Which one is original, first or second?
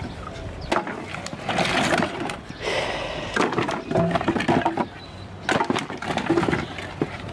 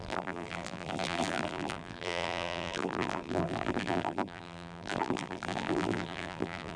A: first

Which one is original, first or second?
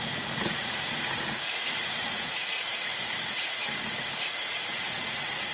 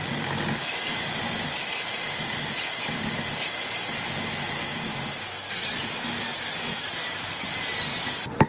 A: second